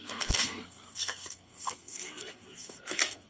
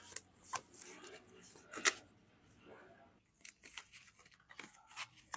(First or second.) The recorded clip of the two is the second